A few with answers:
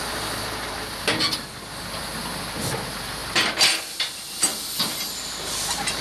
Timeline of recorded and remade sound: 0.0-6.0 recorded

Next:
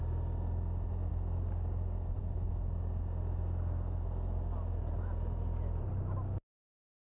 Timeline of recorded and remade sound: 0.0-7.1 recorded

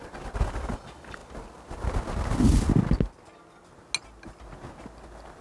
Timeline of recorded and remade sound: 0.0-5.4 recorded

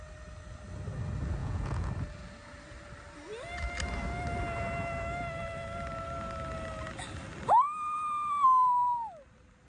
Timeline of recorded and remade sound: 0.0-1.4 recorded; 1.4-1.9 remade; 1.9-9.7 recorded

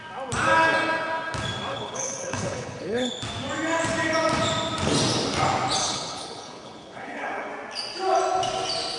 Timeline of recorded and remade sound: 0.0-1.7 recorded; 1.7-3.1 remade; 3.1-5.8 recorded; 5.8-7.5 remade; 7.5-9.0 recorded